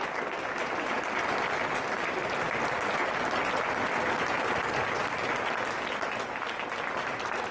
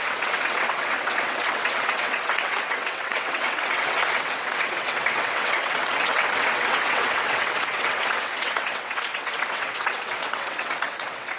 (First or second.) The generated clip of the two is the second